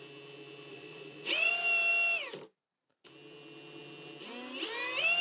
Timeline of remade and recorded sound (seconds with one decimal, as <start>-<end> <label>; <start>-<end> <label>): 0.0-0.7 recorded; 0.7-1.5 remade; 1.5-5.2 recorded